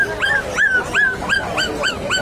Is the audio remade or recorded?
recorded